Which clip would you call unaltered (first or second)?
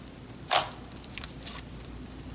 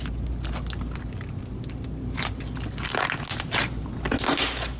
second